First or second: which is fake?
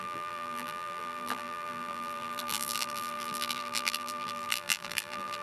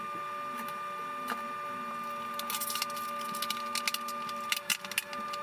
first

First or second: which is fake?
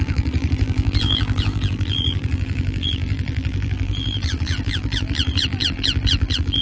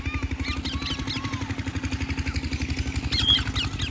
first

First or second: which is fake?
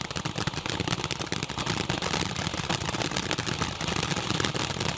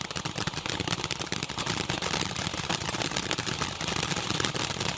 second